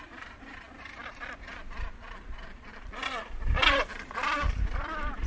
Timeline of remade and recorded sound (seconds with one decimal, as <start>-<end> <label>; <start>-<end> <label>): 0.0-5.3 recorded